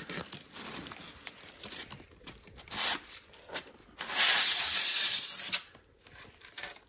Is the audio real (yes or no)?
yes